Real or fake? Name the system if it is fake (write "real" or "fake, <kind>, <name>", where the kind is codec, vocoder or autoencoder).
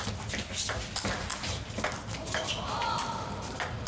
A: real